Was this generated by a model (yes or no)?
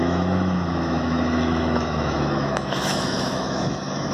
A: yes